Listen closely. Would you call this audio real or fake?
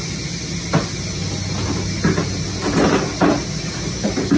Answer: real